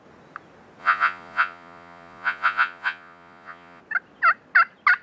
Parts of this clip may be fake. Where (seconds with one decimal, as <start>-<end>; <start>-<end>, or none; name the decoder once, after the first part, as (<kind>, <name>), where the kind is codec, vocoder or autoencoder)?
0.8-3.8 (vocoder, Vocos)